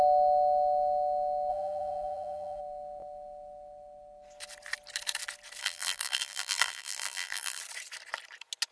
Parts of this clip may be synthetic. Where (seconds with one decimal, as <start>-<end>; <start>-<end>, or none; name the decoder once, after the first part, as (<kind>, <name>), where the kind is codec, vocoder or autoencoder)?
1.5-2.6 (vocoder, BigVGAN v2); 5.6-7.6